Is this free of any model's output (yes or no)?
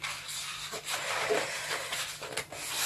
yes